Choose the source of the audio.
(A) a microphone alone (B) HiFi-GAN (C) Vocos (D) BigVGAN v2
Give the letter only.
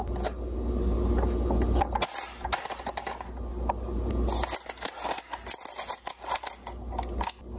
A